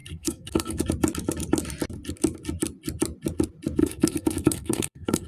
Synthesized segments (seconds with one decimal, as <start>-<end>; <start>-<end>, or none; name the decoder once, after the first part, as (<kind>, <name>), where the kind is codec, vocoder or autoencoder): 0.0-0.8 (codec, SNAC); 3.8-5.3